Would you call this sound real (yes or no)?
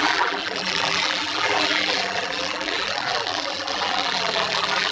no